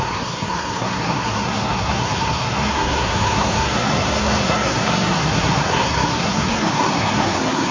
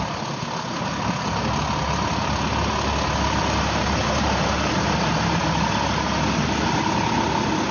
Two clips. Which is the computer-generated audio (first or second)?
first